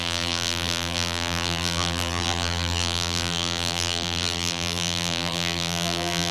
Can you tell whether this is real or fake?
fake